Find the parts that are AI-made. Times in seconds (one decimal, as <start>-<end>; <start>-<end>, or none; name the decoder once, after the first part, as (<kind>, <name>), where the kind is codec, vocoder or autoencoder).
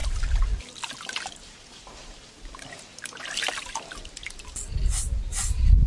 0.0-0.6 (vocoder, BigVGAN v2)